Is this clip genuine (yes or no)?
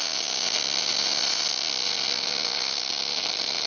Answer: yes